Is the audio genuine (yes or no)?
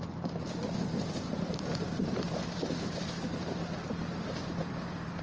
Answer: yes